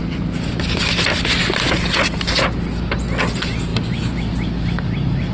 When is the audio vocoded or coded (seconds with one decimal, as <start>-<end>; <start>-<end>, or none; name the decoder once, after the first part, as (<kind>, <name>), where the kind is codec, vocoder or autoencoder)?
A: none